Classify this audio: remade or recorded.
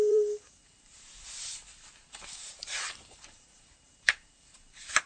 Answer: remade